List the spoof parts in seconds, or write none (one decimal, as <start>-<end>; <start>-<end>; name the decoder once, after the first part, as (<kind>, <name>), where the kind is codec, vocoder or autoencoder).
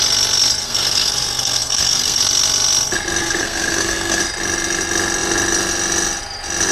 0.6-2.2 (codec, SNAC); 3.2-4.2